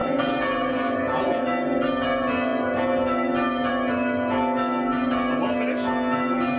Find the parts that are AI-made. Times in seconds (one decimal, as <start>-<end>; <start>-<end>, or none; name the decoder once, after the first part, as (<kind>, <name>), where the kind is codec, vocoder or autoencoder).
0.0-1.4 (vocoder, Vocos)